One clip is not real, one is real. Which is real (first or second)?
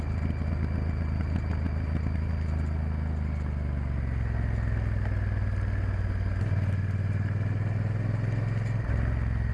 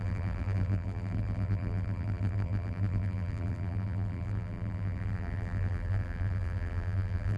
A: first